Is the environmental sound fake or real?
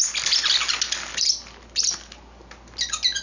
real